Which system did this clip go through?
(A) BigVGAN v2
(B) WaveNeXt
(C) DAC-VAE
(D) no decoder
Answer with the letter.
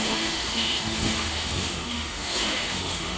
C